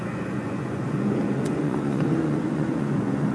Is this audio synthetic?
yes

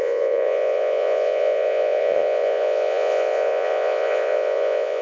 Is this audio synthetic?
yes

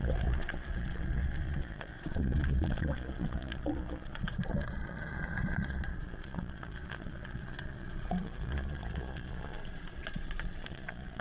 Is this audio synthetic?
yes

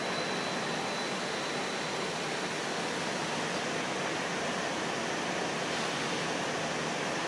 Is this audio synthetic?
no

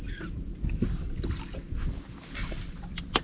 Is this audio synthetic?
no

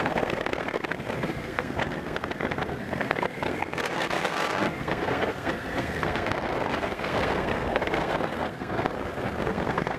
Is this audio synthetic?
yes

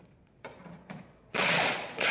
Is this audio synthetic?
yes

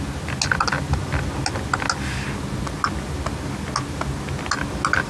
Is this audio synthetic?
no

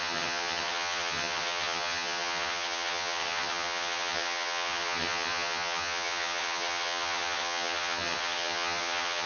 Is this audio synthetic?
yes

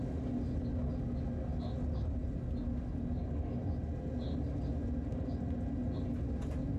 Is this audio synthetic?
no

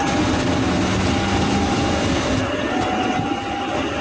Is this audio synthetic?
no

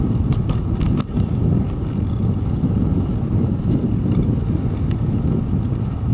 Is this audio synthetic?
no